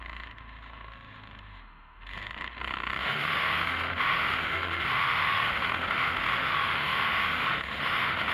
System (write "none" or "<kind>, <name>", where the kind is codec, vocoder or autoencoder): autoencoder, DAC-VAE